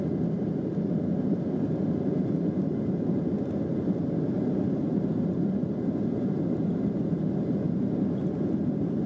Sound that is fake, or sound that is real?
real